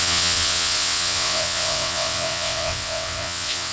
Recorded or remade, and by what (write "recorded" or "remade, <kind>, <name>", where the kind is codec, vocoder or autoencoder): remade, vocoder, WaveNeXt